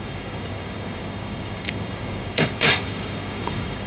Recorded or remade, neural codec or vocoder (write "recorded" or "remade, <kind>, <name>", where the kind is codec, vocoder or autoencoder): remade, codec, DAC